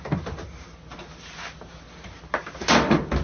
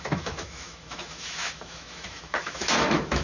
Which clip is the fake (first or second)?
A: second